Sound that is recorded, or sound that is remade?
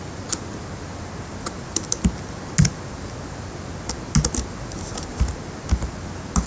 recorded